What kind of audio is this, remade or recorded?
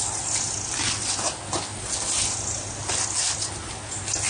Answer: recorded